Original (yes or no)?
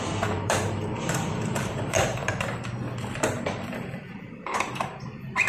no